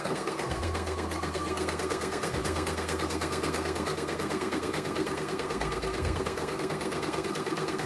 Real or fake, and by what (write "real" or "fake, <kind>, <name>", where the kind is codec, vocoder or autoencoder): fake, codec, SNAC